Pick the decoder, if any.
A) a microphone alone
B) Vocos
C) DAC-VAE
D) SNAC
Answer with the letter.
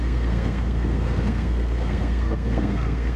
D